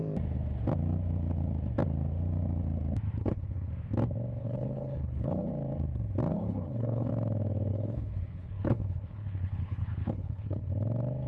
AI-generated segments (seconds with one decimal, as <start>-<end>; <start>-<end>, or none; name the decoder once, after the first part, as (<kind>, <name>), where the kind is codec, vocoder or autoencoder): 3.2-3.7 (codec, HILCodec); 4.4-5.5; 6.3-7.1; 7.7-10.7